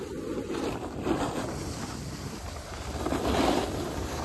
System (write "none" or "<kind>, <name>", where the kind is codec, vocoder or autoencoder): none